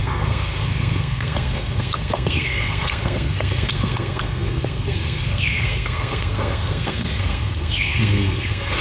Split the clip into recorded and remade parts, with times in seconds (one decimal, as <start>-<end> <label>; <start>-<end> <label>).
0.0-8.8 remade